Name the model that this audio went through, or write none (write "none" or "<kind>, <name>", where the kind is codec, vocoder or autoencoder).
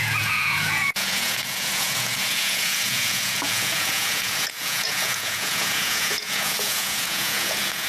vocoder, Vocos